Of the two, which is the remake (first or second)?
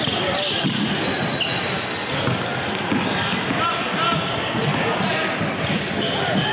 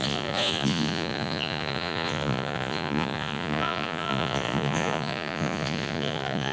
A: second